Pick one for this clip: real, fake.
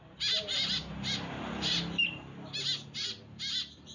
real